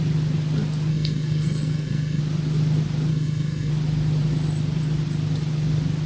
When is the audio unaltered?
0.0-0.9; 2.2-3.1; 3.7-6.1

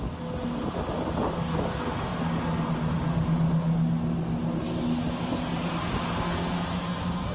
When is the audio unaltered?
0.0-7.3

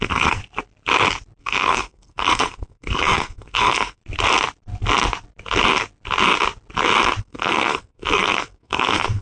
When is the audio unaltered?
0.4-1.4; 4.0-7.2